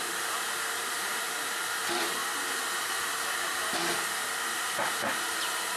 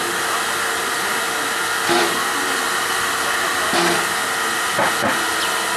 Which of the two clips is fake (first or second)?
first